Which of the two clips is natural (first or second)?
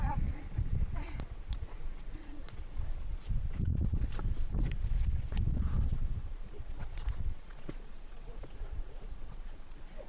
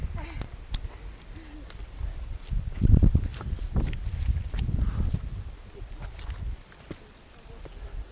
second